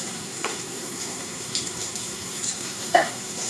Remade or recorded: remade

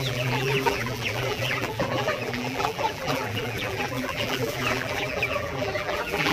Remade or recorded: remade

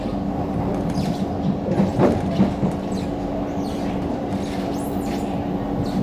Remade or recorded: recorded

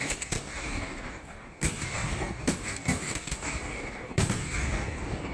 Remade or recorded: remade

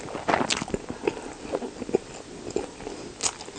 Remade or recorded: recorded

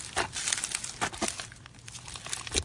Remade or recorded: recorded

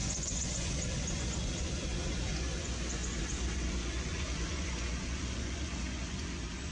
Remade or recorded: remade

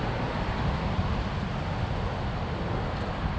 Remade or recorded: recorded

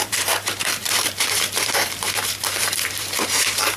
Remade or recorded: remade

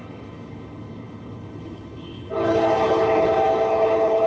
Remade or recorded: remade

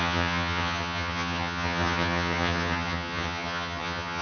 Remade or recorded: remade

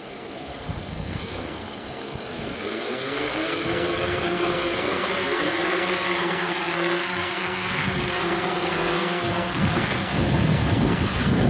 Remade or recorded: remade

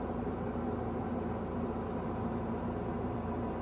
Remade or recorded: recorded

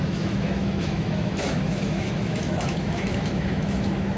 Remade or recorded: remade